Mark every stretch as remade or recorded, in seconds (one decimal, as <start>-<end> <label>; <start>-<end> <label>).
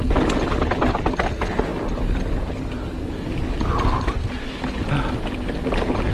0.0-6.1 recorded